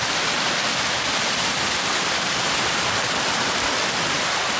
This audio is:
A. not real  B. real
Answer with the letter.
B